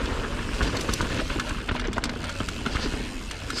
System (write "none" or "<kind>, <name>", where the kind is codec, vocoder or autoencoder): none